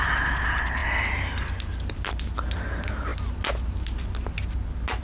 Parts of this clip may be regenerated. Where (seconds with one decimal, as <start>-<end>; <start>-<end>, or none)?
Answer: none